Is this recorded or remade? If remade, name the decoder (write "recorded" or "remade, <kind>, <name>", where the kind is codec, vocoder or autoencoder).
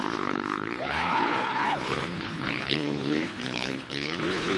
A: remade, codec, HILCodec